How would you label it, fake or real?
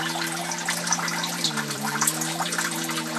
fake